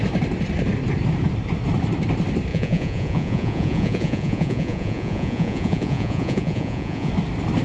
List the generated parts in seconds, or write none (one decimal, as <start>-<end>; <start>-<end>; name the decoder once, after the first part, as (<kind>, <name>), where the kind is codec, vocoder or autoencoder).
2.5-7.1 (vocoder, Vocos)

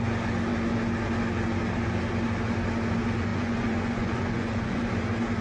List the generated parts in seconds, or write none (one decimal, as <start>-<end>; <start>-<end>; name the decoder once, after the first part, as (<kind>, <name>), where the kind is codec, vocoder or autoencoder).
3.3-4.8 (vocoder, Vocos)

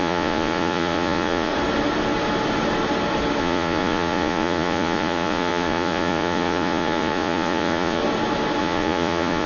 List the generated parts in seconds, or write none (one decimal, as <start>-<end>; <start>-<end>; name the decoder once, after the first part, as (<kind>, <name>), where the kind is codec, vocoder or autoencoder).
0.0-1.5 (vocoder, Vocos); 3.4-8.0; 8.6-9.5

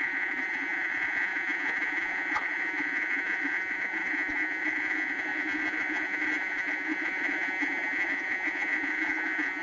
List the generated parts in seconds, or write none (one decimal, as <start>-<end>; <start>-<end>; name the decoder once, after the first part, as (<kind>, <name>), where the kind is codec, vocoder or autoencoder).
0.0-9.6 (vocoder, Vocos)